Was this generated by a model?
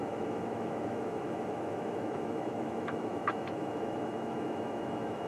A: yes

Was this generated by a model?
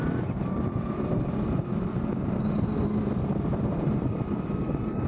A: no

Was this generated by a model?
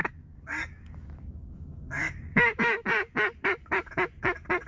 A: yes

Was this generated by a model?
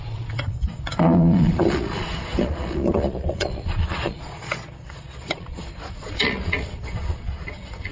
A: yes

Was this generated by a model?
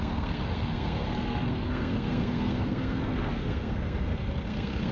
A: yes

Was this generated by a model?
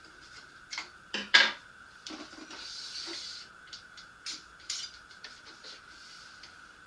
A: yes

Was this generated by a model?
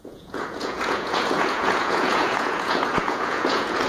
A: yes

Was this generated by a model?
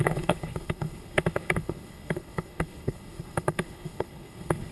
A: yes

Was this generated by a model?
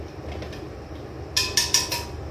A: no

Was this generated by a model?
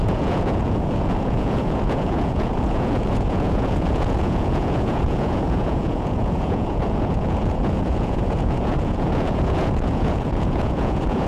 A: yes